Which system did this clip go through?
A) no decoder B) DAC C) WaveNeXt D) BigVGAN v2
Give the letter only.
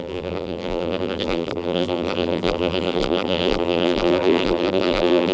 D